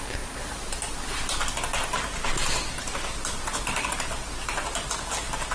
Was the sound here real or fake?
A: real